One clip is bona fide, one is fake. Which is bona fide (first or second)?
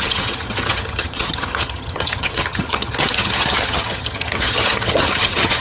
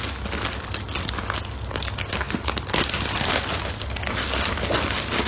second